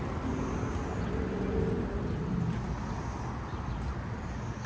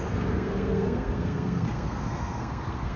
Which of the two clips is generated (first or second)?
second